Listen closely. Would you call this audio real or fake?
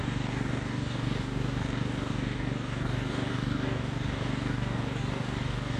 fake